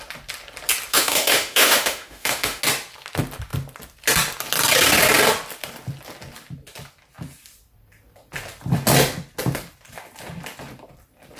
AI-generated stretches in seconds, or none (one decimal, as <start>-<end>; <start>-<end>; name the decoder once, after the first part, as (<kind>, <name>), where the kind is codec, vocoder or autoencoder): 0.9-2.6 (autoencoder, DAC-VAE)